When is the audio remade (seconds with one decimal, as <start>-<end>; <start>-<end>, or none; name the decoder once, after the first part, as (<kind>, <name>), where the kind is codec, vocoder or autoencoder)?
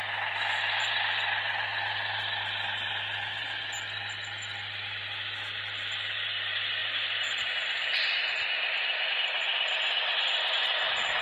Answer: none